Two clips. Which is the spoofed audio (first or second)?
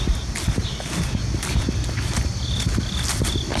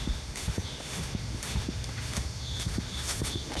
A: second